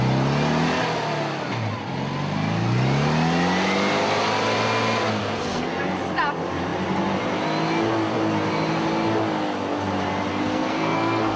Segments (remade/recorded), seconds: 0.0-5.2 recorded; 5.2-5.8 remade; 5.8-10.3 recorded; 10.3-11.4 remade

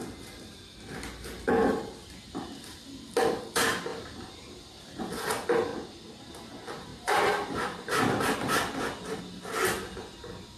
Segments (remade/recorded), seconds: 0.0-5.7 recorded; 5.7-6.3 remade; 6.3-6.9 recorded; 6.9-9.2 remade; 9.2-10.6 recorded

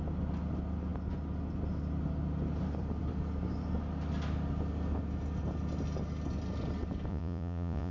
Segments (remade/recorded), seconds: 0.0-7.1 recorded; 7.1-7.9 remade

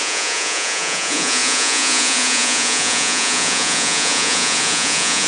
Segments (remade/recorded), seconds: 0.0-5.3 remade

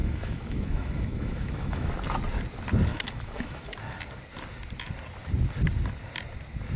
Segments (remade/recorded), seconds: 0.0-1.9 remade; 1.9-2.9 recorded; 2.9-3.7 remade; 3.7-6.8 recorded

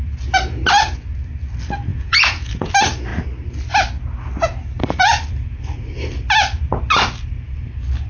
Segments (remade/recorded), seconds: 0.0-1.9 recorded; 1.9-2.7 remade; 2.7-8.1 recorded